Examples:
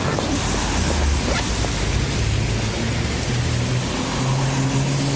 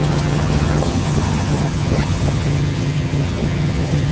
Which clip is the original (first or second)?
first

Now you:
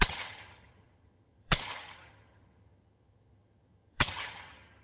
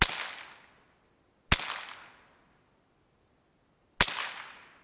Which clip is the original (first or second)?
second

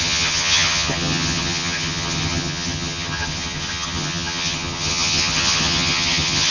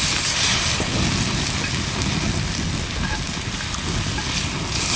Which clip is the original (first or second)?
second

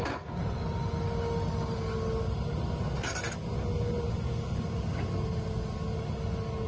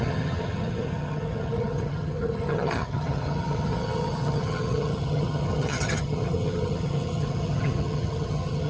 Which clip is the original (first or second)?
first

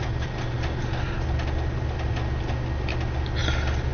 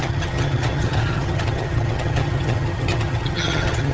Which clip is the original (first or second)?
first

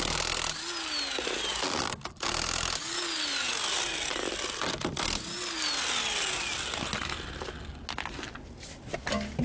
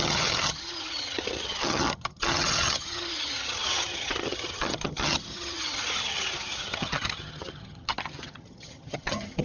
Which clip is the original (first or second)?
first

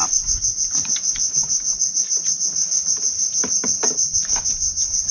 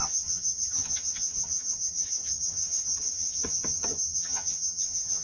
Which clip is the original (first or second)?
first